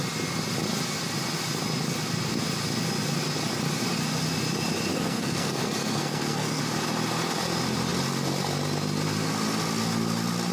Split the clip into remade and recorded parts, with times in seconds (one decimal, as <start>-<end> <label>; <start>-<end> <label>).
0.0-4.9 recorded; 4.9-6.6 remade; 6.6-10.5 recorded